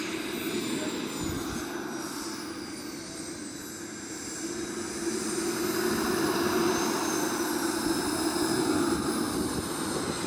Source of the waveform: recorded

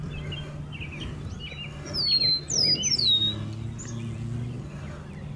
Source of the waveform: recorded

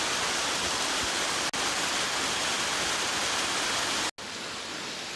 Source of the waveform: recorded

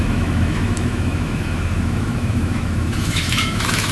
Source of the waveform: remade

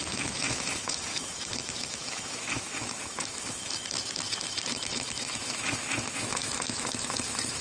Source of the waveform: remade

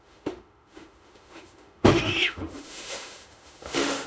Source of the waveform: remade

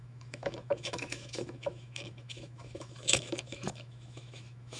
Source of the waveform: remade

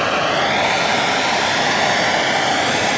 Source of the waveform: recorded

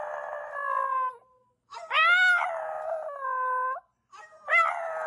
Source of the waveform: recorded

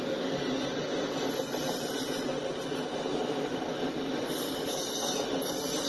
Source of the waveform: recorded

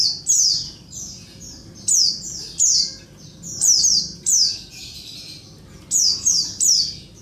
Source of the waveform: recorded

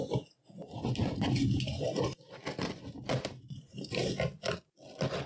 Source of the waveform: recorded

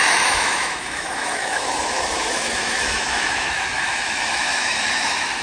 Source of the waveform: remade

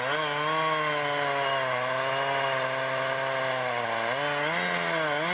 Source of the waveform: recorded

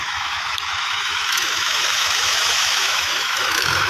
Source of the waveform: remade